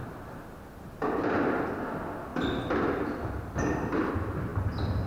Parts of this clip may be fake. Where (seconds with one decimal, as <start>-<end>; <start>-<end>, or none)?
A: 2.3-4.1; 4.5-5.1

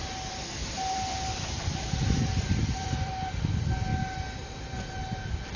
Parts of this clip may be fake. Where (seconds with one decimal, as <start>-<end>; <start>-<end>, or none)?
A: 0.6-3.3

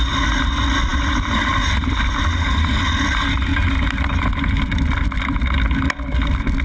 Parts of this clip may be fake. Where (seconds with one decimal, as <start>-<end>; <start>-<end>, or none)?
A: none

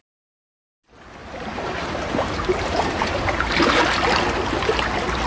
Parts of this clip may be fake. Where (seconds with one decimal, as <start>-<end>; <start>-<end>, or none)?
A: 1.2-3.8

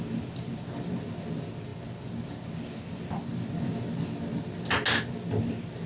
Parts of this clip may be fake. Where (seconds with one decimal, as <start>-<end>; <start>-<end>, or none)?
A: none

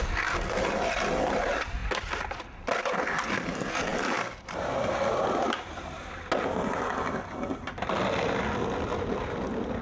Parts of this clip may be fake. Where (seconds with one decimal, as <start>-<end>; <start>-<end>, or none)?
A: none

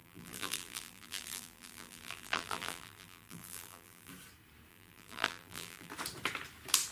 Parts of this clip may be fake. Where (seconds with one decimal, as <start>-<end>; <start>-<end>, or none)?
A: 0.0-4.1; 4.7-5.9

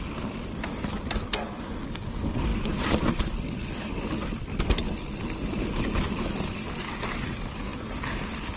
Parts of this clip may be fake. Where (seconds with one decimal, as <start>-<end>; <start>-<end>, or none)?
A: none